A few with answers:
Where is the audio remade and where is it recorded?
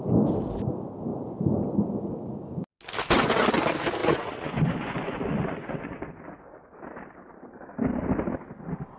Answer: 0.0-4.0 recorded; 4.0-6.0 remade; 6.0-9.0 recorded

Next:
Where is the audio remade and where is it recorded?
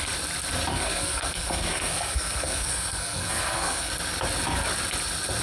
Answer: 0.0-0.7 recorded; 0.7-3.9 remade; 3.9-5.4 recorded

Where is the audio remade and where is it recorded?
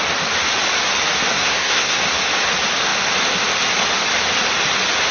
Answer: 0.0-1.3 recorded; 1.3-2.0 remade; 2.0-5.1 recorded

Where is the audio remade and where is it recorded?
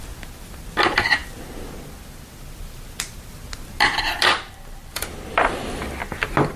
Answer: 0.0-6.6 recorded